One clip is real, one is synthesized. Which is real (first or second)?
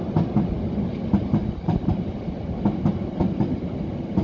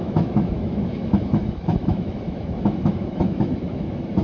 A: first